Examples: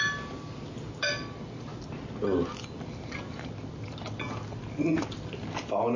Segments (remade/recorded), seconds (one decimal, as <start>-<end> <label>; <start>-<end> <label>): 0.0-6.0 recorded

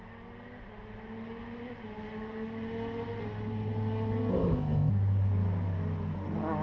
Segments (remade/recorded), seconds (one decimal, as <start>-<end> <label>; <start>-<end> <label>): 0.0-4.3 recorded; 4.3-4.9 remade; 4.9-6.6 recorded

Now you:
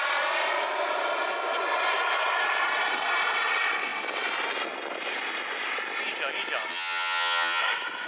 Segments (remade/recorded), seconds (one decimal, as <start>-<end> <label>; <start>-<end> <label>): 0.0-6.7 recorded; 6.7-7.6 remade; 7.6-8.1 recorded

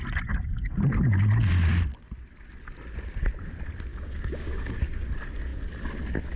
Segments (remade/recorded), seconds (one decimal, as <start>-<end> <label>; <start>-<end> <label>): 0.0-3.9 recorded; 3.9-5.1 remade; 5.1-6.4 recorded

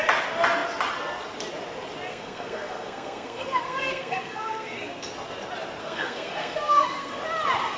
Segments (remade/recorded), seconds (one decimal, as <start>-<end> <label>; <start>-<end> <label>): 0.0-2.1 recorded; 2.1-5.1 remade; 5.1-5.8 recorded; 5.8-7.2 remade; 7.2-7.8 recorded